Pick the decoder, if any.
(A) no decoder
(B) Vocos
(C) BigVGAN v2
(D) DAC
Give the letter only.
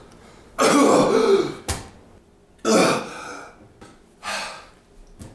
A